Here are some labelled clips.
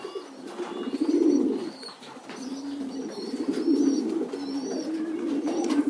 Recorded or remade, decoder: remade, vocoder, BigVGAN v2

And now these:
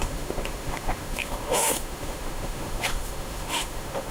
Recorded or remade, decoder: remade, autoencoder, DAC-VAE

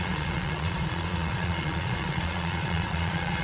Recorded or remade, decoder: remade, vocoder, Vocos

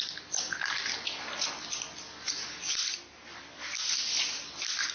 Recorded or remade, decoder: recorded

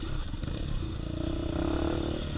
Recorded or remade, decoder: recorded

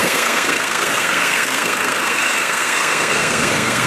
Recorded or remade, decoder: remade, codec, SNAC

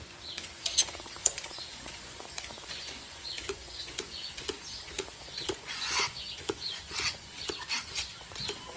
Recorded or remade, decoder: remade, vocoder, Vocos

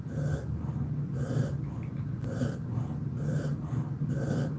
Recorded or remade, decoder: recorded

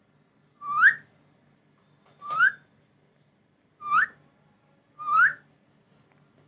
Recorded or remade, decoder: recorded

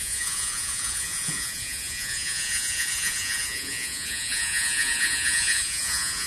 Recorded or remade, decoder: remade, vocoder, Vocos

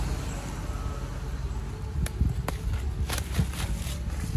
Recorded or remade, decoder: recorded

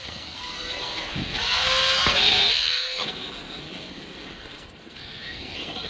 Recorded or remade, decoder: remade, codec, SNAC